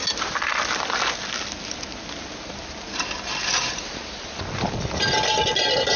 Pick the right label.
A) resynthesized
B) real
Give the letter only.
B